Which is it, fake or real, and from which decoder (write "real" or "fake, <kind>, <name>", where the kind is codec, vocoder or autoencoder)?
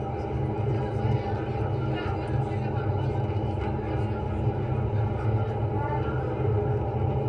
real